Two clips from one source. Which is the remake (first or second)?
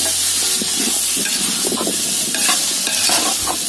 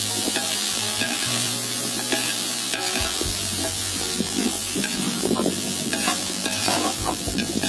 second